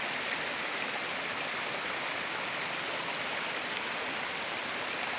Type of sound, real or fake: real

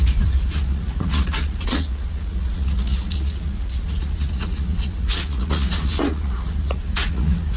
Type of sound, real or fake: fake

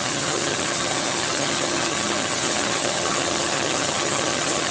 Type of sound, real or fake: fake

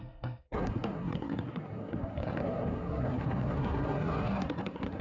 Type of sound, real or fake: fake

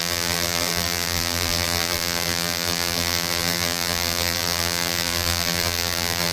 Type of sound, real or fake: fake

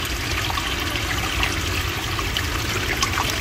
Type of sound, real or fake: real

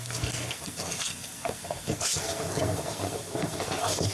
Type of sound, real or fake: fake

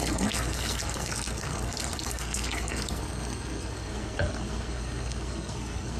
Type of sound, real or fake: fake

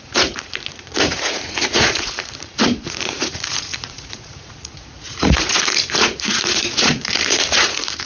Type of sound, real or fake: fake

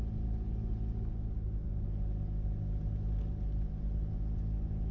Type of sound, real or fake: real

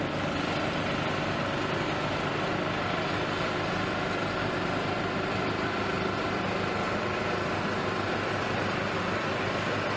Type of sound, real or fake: real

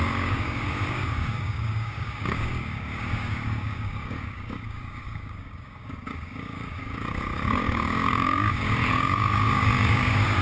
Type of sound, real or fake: fake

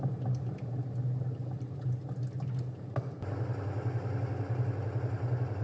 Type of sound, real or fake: real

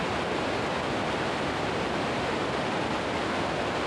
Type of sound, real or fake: real